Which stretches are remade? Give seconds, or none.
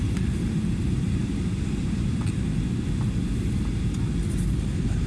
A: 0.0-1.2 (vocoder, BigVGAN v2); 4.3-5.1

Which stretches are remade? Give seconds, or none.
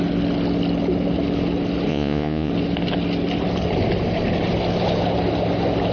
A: 1.9-2.5 (vocoder, Vocos)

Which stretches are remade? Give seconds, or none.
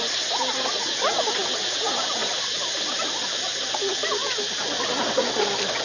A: none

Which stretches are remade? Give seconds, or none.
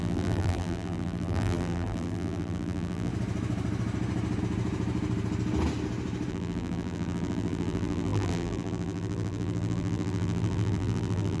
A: 0.0-3.1 (vocoder, BigVGAN v2); 6.3-11.4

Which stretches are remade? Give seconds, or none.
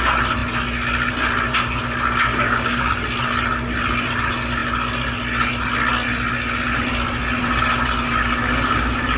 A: 2.3-2.9 (codec, DAC)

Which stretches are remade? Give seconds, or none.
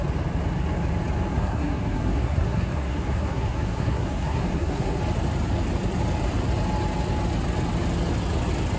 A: 1.3-5.0 (codec, SNAC)